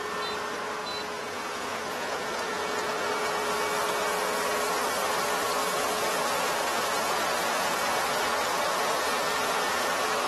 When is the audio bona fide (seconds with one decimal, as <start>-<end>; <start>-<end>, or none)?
0.0-0.9; 3.1-5.6